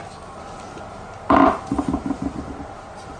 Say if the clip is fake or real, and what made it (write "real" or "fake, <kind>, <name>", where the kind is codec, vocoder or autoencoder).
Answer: fake, vocoder, BigVGAN v2